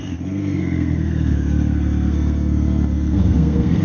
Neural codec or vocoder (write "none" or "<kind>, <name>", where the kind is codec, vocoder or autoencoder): codec, SNAC